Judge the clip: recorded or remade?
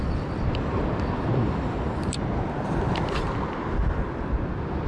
recorded